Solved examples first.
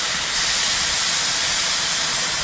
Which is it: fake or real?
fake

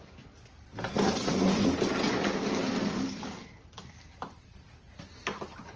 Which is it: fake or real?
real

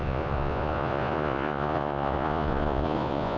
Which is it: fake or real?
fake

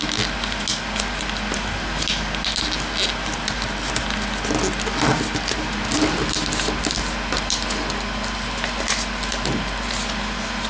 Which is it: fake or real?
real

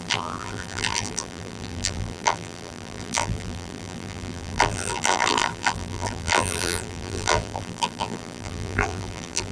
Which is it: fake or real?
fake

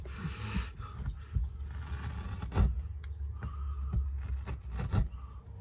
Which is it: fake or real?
real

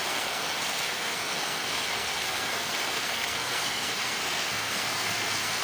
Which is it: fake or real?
fake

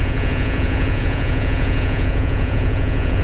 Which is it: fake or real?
fake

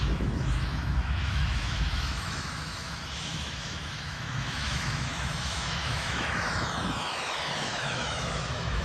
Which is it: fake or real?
fake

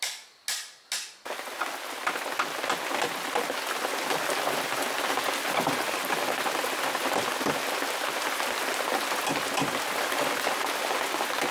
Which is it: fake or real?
real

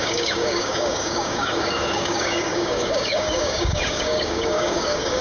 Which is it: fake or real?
fake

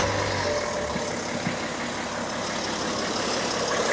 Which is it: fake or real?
real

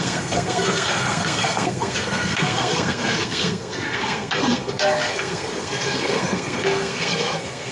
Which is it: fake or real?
fake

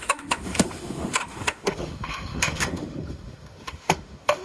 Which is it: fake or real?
fake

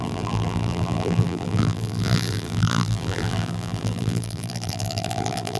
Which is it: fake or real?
fake